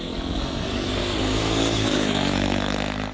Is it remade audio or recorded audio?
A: remade